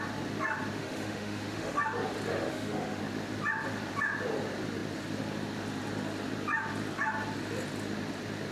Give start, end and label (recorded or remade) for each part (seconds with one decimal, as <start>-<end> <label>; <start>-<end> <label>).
0.0-0.8 recorded; 0.8-1.8 remade; 1.8-2.3 recorded; 2.3-3.0 remade; 3.0-8.5 recorded